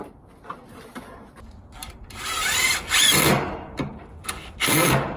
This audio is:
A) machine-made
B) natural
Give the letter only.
B